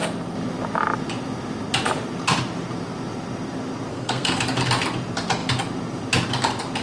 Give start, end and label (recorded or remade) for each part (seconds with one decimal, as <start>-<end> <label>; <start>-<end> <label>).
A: 0.0-3.9 recorded; 3.9-4.4 remade; 4.4-6.8 recorded